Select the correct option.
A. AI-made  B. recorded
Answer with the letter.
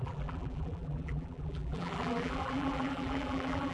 A